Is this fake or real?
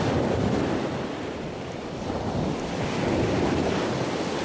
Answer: real